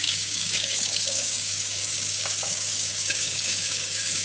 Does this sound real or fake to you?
fake